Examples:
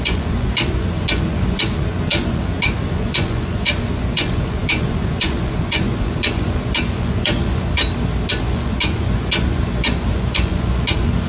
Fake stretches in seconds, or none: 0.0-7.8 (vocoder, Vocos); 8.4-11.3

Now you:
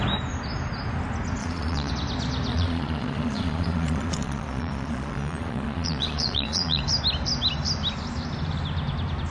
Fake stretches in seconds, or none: 1.4-1.9 (vocoder, Vocos); 2.5-6.8

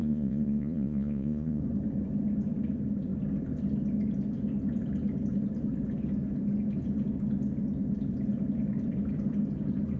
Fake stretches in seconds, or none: 0.0-1.6 (vocoder, Vocos)

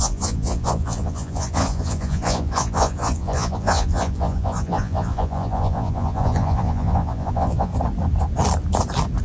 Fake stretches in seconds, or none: 0.0-7.7 (vocoder, Vocos)

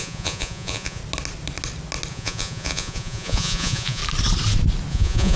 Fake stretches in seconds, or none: 0.0-1.0 (vocoder, Vocos); 2.1-4.0; 4.9-5.4